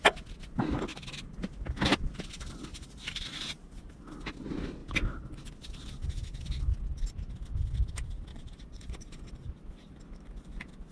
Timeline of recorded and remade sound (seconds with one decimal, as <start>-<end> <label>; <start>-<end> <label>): 0.0-8.3 recorded; 8.3-9.3 remade; 9.3-10.9 recorded